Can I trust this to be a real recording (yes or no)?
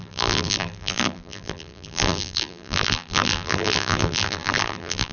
no